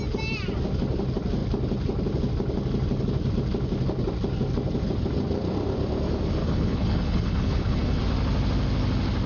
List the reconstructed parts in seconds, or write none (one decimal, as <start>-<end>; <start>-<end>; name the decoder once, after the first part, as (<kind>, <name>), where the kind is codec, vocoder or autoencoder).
6.4-8.0 (codec, HILCodec)